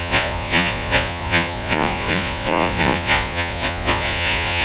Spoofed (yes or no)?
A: yes